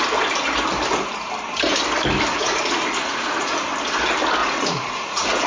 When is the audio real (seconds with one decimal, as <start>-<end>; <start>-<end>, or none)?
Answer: 0.0-2.3; 3.7-4.4